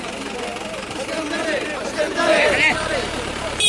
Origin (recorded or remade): remade